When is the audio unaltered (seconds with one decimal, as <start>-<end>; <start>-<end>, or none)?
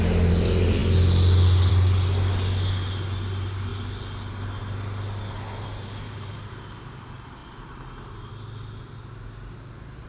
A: 0.0-5.7; 6.5-10.1